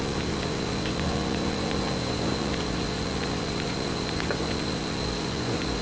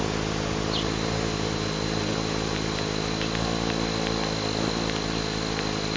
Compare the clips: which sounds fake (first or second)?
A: first